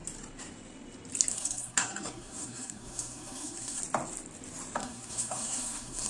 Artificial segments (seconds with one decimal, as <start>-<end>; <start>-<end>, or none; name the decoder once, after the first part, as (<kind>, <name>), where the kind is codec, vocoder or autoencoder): 1.3-3.8 (codec, SNAC); 4.8-6.1